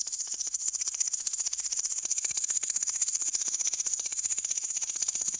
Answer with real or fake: fake